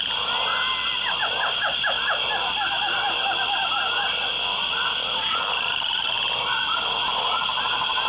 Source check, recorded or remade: recorded